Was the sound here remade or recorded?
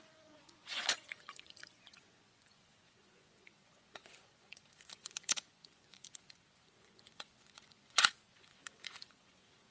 remade